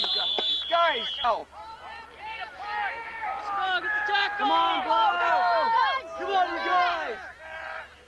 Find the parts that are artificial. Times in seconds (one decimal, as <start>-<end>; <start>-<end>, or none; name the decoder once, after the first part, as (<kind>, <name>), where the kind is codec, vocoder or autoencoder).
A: none